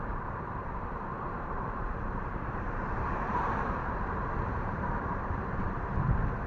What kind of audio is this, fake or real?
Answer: fake